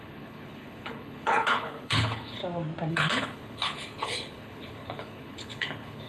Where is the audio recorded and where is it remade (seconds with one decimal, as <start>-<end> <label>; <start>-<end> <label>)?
0.0-2.4 remade; 2.4-2.9 recorded; 2.9-6.1 remade